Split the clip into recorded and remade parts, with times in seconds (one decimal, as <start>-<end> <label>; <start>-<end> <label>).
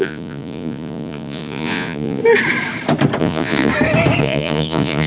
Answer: 0.0-2.2 remade; 2.2-3.2 recorded; 3.2-3.7 remade; 3.7-4.2 recorded; 4.2-5.1 remade